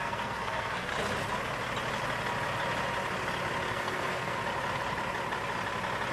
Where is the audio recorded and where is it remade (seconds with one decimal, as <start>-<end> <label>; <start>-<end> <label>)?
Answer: 0.0-0.9 remade; 0.9-3.7 recorded; 3.7-4.4 remade; 4.4-6.1 recorded